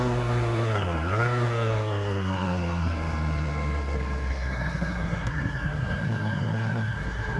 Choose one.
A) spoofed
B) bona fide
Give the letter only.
A